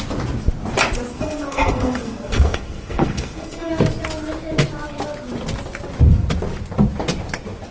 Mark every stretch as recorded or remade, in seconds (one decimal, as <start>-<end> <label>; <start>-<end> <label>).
0.0-1.1 recorded; 1.1-3.7 remade; 3.7-7.7 recorded